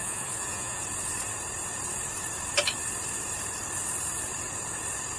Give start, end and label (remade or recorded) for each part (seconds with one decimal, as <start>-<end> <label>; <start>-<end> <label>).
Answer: 0.0-0.8 remade; 0.8-5.2 recorded